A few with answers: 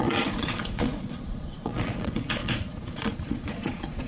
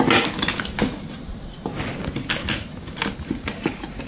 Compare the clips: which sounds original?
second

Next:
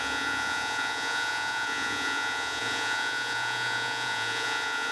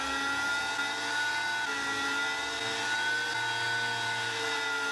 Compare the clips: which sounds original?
second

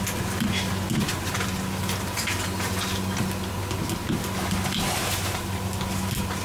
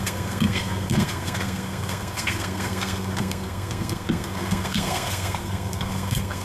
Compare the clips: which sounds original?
first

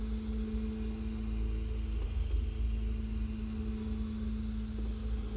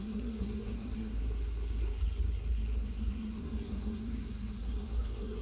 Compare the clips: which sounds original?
first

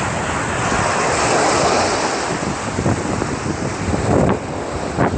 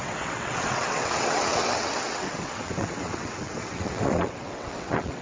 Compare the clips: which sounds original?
first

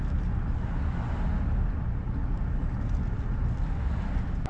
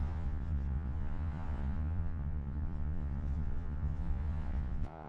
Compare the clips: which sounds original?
first